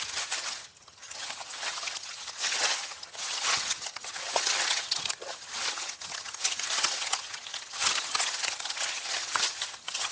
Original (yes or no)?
no